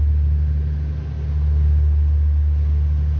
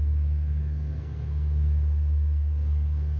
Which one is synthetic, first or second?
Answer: second